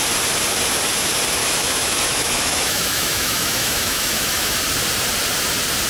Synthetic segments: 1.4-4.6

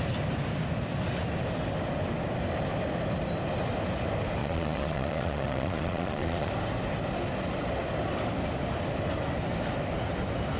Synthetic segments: 4.4-6.5

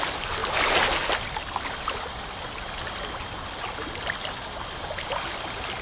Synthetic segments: none

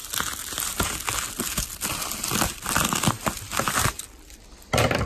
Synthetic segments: none

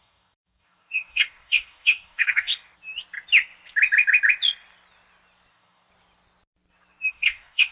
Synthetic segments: 0.0-2.5; 5.5-5.9; 7.1-7.7

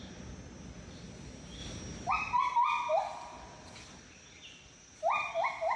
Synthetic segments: none